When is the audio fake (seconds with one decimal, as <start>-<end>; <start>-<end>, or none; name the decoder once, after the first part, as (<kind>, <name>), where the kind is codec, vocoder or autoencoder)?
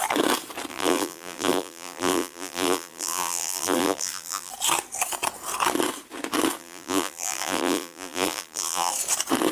0.7-4.5 (vocoder, BigVGAN v2); 6.6-8.9